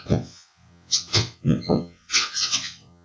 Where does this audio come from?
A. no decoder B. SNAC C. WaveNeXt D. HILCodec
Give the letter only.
C